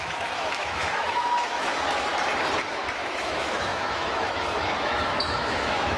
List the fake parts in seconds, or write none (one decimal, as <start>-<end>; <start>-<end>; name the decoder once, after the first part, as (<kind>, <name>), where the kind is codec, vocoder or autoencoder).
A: 0.0-2.1 (autoencoder, DAC-VAE); 2.7-6.0